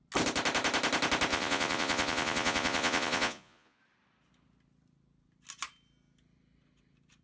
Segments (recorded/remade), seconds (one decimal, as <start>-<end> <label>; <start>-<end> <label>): 0.0-1.3 recorded; 1.3-3.8 remade; 3.8-7.2 recorded